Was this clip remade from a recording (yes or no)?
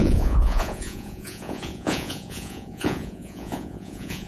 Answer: yes